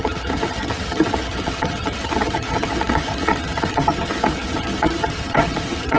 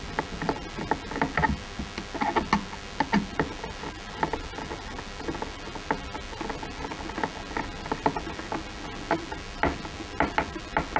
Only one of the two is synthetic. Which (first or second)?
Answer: first